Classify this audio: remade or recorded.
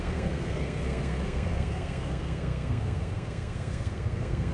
remade